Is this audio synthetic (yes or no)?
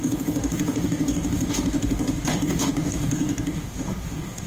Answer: yes